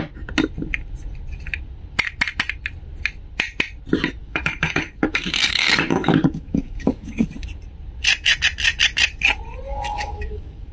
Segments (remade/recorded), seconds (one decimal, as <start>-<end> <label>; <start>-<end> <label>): 0.0-4.2 recorded; 4.2-7.3 remade; 7.3-9.7 recorded; 9.7-10.7 remade